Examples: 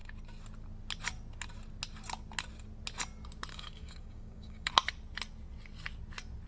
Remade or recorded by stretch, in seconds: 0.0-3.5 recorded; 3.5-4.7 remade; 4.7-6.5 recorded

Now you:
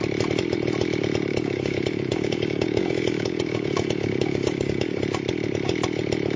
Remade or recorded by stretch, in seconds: 0.0-1.3 recorded; 1.3-5.0 remade; 5.0-6.4 recorded

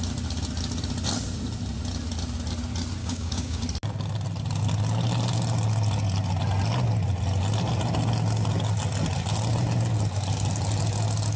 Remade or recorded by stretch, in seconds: 0.0-3.0 recorded; 3.0-3.6 remade; 3.6-11.4 recorded

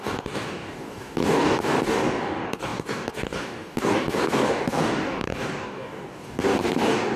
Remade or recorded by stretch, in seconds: 0.0-7.2 remade